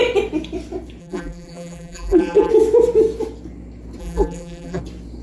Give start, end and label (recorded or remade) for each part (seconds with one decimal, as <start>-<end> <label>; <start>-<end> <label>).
0.0-1.0 recorded; 1.0-2.5 remade; 2.5-4.0 recorded; 4.0-4.8 remade; 4.8-5.2 recorded